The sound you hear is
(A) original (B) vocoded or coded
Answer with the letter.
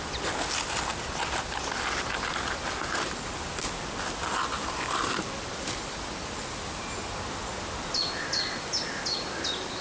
A